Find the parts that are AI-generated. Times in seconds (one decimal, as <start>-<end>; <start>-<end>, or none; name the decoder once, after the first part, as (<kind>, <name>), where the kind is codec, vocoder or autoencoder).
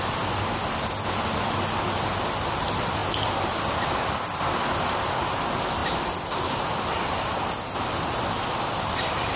none